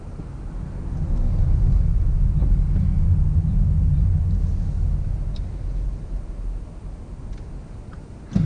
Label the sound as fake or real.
real